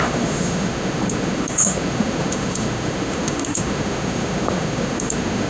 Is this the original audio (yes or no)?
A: no